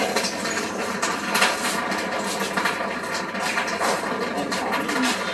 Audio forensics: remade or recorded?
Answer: recorded